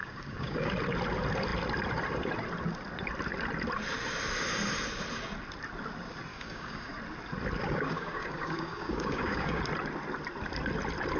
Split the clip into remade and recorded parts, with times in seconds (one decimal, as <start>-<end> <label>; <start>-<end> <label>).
0.0-0.7 remade; 0.7-6.3 recorded; 6.3-6.9 remade; 6.9-7.6 recorded; 7.6-9.6 remade; 9.6-11.2 recorded